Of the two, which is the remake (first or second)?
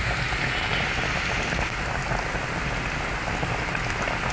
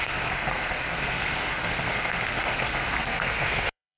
second